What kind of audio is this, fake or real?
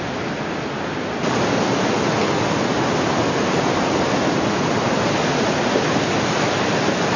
real